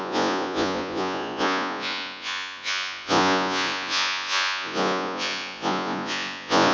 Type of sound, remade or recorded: remade